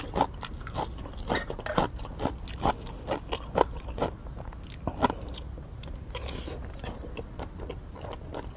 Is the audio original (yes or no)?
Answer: yes